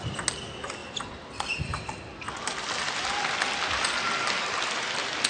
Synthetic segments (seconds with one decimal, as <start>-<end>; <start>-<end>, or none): none